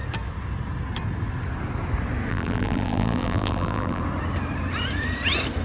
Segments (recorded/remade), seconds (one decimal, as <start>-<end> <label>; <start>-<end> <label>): 0.0-2.3 recorded; 2.3-4.0 remade; 4.0-5.6 recorded